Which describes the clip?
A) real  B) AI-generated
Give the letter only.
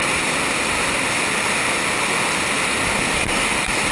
A